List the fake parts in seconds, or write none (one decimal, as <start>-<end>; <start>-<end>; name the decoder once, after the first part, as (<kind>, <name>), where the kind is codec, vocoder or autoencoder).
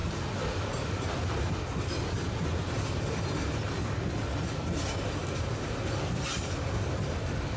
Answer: none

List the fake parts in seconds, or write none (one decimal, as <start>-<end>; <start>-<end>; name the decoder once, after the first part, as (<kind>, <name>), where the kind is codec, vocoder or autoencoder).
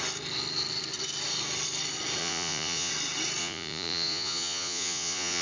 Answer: 2.2-2.9 (vocoder, Vocos); 3.4-5.4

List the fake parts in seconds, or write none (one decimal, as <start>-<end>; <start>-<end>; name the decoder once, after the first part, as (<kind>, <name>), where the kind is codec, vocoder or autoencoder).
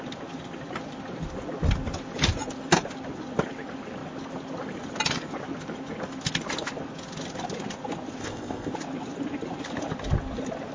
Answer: 8.2-8.7 (codec, ZipCodec)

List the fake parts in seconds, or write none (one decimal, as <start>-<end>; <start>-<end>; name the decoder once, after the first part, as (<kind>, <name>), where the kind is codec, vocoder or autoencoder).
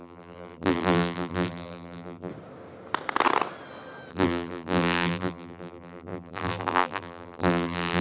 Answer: 0.0-2.3 (vocoder, BigVGAN v2); 4.1-8.0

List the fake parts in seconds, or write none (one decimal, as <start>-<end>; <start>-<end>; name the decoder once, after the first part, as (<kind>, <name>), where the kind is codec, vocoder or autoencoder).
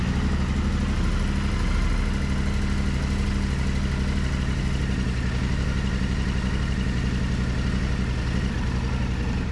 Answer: none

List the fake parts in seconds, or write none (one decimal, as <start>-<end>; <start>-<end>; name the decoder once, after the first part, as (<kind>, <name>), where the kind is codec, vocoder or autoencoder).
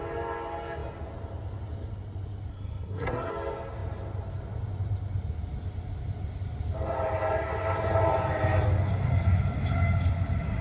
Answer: 2.5-3.3 (codec, SNAC)